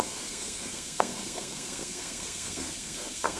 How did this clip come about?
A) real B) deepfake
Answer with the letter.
B